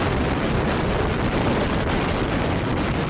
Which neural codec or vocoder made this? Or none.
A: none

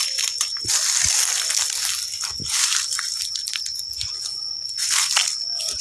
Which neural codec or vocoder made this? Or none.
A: none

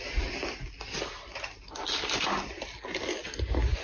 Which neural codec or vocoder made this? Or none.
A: none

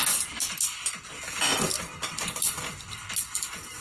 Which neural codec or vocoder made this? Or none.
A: none